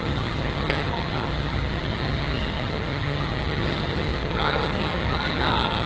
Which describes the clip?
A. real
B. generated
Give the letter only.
B